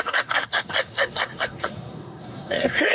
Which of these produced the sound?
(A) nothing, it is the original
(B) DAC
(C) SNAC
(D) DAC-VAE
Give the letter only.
C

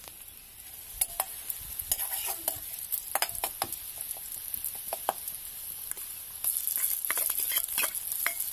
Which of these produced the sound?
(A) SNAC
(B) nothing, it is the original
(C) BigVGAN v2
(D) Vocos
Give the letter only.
B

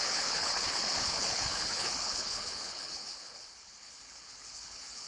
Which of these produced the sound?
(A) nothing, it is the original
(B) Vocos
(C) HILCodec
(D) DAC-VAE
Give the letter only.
C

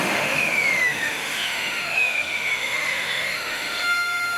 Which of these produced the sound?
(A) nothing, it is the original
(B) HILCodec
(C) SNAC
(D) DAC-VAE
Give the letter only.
D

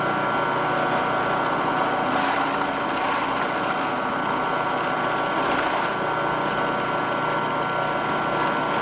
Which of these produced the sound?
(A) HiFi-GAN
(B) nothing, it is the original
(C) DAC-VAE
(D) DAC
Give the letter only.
B